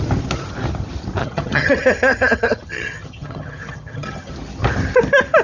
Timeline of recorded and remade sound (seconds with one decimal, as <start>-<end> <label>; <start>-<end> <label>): 0.0-1.2 recorded; 1.2-4.3 remade; 4.3-5.4 recorded